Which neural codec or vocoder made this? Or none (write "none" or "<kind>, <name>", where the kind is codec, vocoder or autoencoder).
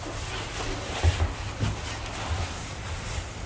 none